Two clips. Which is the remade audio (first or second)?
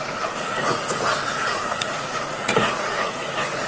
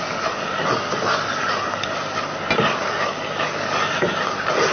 first